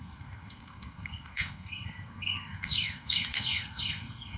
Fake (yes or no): yes